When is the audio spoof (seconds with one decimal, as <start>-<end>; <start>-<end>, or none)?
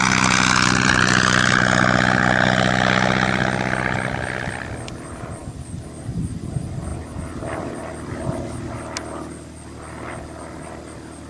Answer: none